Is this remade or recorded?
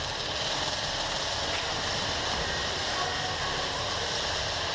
recorded